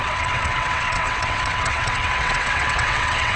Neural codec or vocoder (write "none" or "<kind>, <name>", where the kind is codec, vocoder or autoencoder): vocoder, WaveNeXt